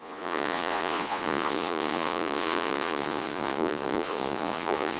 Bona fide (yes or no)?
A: no